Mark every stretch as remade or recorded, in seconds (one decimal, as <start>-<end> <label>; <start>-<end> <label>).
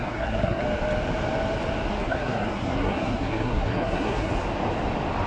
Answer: 0.0-0.6 remade; 0.6-1.9 recorded; 1.9-4.3 remade; 4.3-5.3 recorded